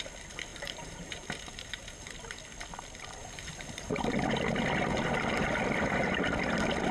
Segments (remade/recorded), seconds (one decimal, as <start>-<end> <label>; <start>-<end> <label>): 0.0-0.5 recorded; 0.5-2.1 remade; 2.1-3.2 recorded; 3.2-3.9 remade; 3.9-6.9 recorded